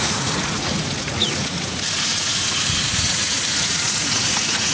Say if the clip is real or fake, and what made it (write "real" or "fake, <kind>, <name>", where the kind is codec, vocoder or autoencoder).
fake, vocoder, Vocos